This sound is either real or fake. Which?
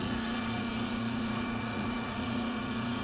fake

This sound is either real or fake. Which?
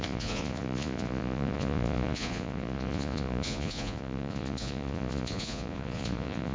fake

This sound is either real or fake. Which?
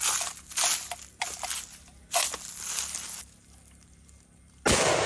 real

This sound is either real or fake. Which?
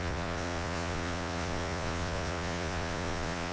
fake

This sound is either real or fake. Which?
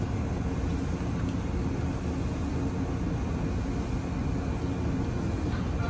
real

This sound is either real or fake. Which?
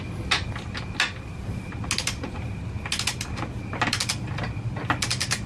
real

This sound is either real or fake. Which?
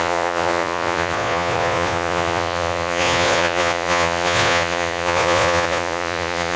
fake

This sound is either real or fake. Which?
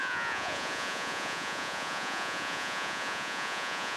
fake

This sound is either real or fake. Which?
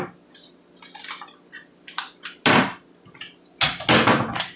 real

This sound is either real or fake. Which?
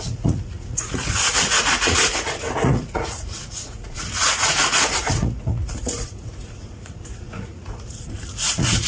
fake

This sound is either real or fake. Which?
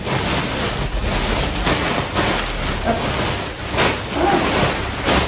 real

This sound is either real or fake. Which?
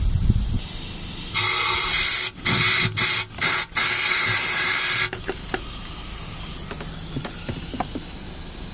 real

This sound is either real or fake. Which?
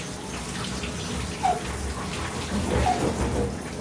real